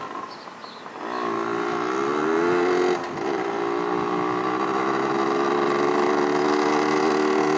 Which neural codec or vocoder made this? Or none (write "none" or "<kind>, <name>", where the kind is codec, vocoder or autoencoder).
none